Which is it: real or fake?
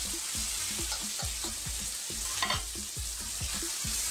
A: real